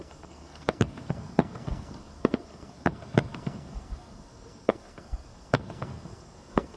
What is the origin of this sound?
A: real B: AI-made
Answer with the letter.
B